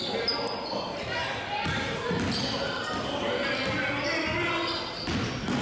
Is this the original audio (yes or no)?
yes